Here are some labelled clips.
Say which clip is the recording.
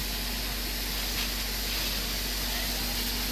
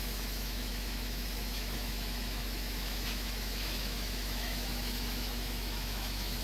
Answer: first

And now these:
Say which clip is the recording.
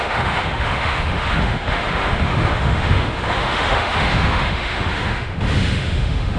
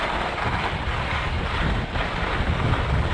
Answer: second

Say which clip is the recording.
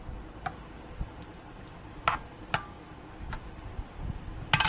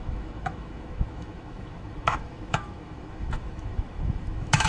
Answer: first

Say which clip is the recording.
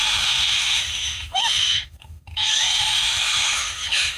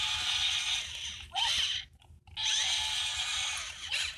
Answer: second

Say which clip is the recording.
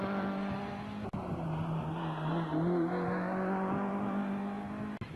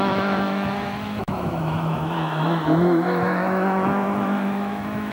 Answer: first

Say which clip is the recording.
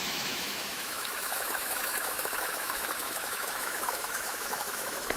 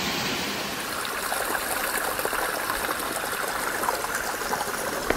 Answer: second